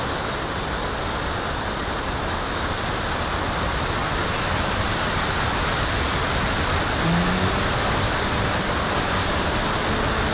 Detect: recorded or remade recorded